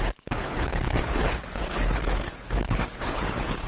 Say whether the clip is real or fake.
fake